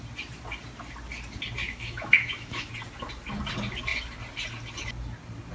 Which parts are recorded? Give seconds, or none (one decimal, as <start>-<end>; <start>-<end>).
0.0-1.6; 2.7-5.5